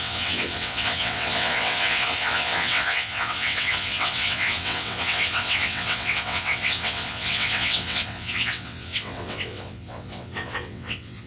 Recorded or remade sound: remade